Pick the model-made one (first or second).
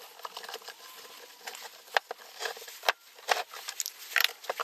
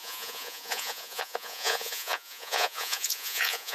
second